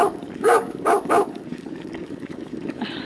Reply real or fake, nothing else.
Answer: fake